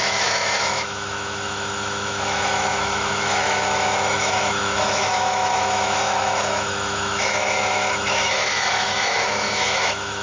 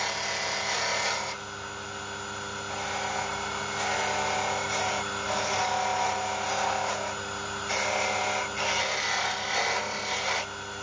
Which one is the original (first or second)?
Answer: second